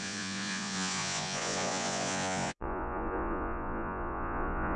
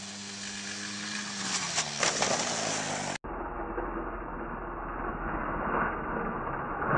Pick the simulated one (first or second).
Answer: first